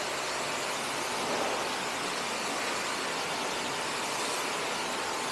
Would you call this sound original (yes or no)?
yes